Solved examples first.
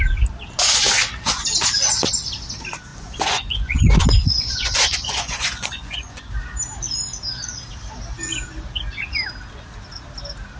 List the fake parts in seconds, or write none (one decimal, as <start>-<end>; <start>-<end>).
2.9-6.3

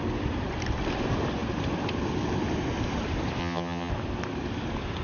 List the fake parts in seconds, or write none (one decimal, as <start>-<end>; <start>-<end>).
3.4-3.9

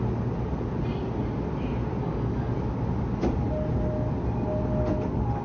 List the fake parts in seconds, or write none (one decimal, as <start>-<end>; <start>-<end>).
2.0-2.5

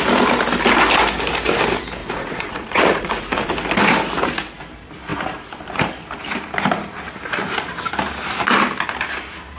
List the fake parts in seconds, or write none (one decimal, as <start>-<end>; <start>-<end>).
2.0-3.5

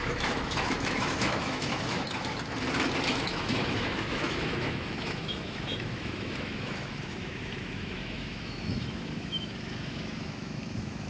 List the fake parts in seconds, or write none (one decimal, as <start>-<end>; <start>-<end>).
0.0-2.3; 3.0-11.1

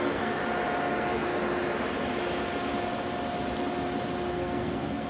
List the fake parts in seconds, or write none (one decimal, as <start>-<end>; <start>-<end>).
0.0-0.4; 0.9-1.3; 4.3-5.1